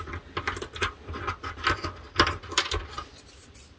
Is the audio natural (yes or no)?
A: yes